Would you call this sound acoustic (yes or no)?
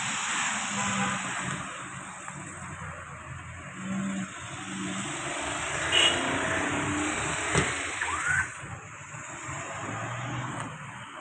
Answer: yes